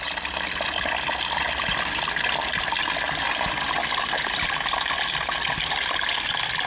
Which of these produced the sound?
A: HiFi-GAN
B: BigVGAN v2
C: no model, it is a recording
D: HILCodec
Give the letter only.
C